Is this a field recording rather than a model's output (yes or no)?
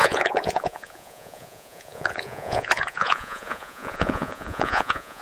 no